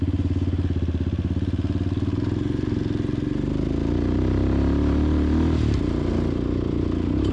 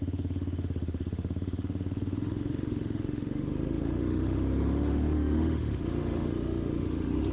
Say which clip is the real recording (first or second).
first